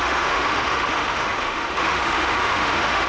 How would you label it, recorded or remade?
remade